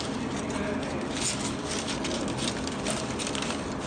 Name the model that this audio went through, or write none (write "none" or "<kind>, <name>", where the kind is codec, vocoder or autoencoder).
none